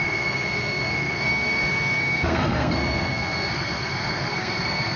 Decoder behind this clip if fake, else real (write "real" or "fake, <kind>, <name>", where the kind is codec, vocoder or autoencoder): fake, codec, SNAC